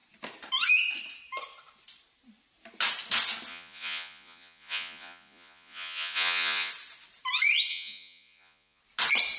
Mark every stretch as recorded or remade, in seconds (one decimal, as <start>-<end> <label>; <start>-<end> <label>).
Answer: 0.0-3.5 recorded; 3.5-6.7 remade; 6.7-7.7 recorded; 7.7-8.8 remade; 8.8-9.4 recorded